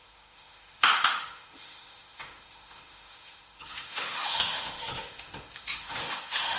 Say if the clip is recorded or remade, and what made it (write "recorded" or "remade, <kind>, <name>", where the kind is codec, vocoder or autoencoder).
remade, autoencoder, DAC-VAE